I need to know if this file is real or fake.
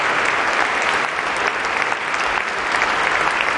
real